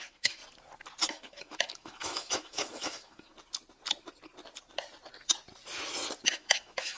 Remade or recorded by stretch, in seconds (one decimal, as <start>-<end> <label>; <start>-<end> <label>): 0.0-0.4 remade; 0.4-1.1 recorded; 1.1-3.3 remade; 3.3-6.3 recorded; 6.3-7.0 remade